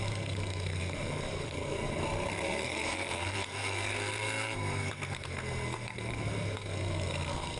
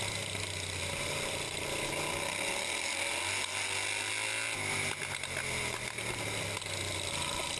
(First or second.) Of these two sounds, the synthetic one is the first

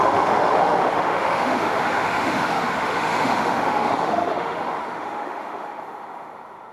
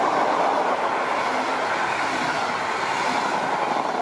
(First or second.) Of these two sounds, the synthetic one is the first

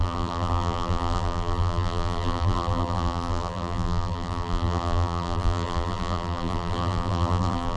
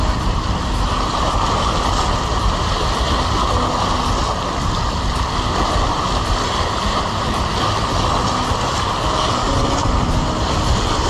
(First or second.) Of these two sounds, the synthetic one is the first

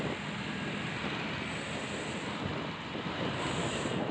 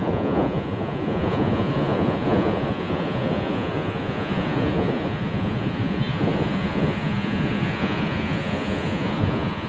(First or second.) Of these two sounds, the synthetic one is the second